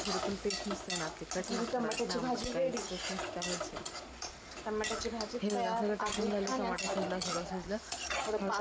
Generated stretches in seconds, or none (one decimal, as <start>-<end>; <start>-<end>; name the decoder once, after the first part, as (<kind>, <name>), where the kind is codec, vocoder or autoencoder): 3.7-4.5 (vocoder, Vocos); 7.2-8.6